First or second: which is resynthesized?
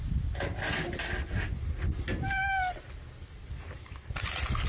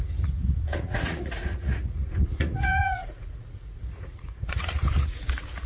second